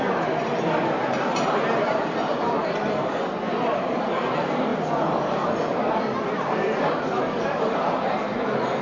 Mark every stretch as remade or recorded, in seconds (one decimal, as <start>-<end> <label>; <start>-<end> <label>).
0.0-8.8 recorded